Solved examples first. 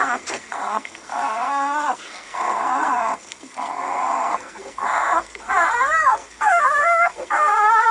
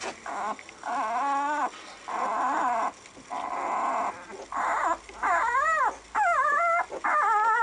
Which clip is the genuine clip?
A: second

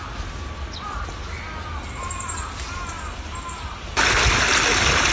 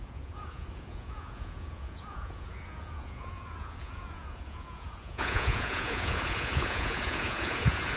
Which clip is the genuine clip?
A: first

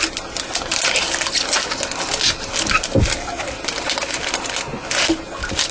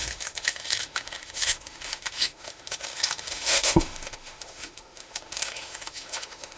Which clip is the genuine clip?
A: first